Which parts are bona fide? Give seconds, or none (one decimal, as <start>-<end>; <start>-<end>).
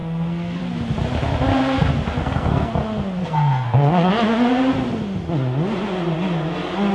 0.6-2.2; 2.7-3.2; 4.1-6.9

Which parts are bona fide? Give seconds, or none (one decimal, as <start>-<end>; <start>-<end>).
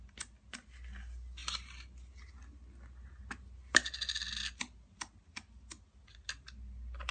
0.0-7.1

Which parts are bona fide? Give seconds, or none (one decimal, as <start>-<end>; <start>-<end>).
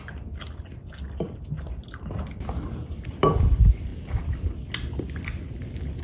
0.0-6.0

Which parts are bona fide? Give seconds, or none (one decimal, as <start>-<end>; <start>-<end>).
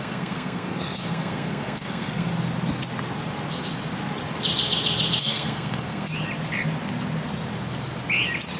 2.3-5.2; 6.1-8.6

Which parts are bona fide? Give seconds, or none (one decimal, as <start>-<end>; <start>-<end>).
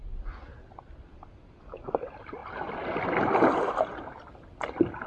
0.0-5.1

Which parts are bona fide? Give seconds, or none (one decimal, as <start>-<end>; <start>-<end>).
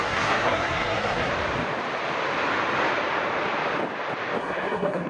1.3-4.4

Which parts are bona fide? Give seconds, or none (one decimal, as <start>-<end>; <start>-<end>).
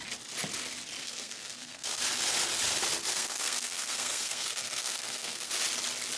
0.0-1.0; 2.0-3.1; 5.5-6.2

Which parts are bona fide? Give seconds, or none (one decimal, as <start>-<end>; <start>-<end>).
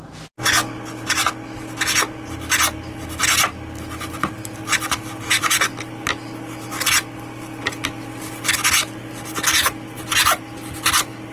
0.0-11.3